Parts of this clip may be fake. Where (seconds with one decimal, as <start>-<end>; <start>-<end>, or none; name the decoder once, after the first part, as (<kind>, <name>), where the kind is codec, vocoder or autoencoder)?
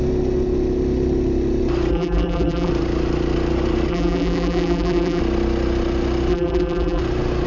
1.9-2.7 (vocoder, BigVGAN v2); 3.9-5.2; 6.3-7.0